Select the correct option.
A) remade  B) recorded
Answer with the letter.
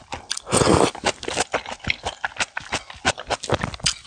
B